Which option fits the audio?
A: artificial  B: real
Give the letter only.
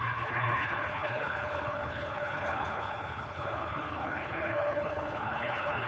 A